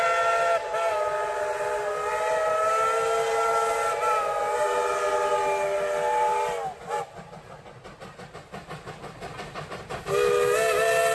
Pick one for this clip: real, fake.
real